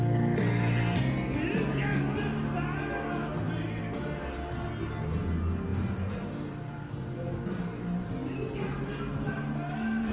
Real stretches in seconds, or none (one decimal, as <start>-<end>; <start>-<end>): 0.0-3.3; 3.8-5.7; 8.5-9.1